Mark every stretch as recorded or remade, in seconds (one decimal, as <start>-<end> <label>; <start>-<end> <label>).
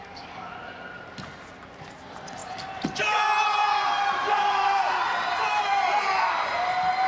0.0-0.5 remade; 0.5-7.1 recorded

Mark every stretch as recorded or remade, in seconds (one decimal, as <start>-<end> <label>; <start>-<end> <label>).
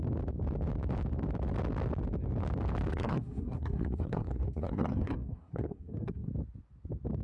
0.0-2.9 recorded; 2.9-6.3 remade; 6.3-7.2 recorded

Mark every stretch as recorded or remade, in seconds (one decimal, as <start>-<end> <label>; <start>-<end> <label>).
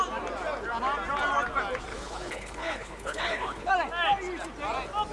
0.0-1.9 recorded; 1.9-3.7 remade; 3.7-5.1 recorded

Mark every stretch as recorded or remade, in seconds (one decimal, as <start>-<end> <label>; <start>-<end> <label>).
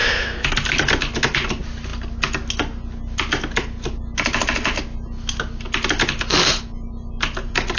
0.0-0.5 remade; 0.5-7.8 recorded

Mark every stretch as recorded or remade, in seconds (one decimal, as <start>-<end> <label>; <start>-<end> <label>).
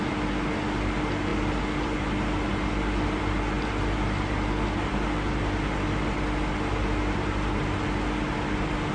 0.0-8.9 recorded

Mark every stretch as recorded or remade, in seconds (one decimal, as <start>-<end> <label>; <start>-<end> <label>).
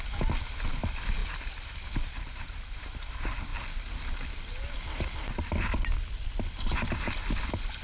0.0-7.8 recorded